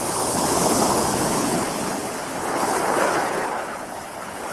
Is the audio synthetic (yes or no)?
yes